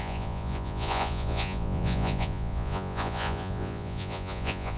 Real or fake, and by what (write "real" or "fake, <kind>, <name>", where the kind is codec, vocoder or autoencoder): fake, vocoder, Vocos